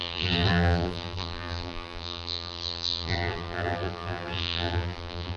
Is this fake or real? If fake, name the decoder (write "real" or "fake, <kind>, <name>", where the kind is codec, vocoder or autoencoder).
fake, vocoder, BigVGAN v2